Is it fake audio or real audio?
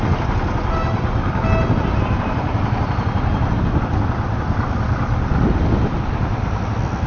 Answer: real